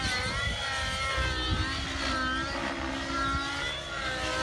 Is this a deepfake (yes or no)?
no